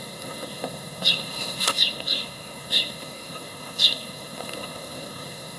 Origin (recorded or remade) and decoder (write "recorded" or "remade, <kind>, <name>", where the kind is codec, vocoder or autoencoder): remade, codec, SNAC